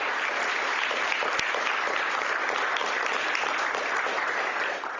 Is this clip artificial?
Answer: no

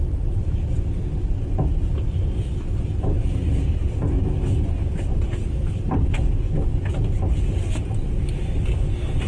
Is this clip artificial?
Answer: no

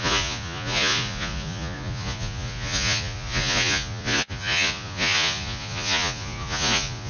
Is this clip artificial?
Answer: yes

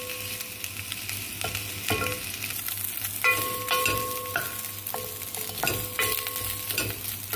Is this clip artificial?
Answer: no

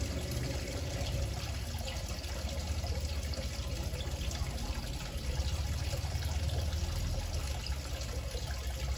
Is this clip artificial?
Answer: no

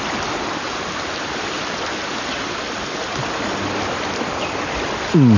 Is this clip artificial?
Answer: no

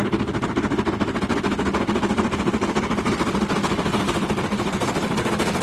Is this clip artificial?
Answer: no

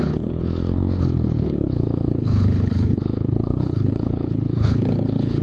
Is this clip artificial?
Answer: yes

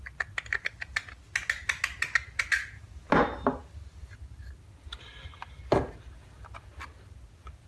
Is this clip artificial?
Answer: no